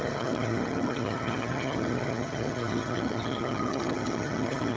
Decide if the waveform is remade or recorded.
remade